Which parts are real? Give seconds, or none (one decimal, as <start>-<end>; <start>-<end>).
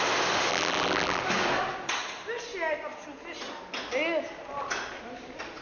0.0-0.5; 1.2-5.6